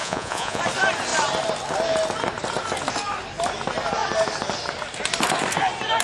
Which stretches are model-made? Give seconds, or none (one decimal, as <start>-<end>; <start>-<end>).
0.0-0.6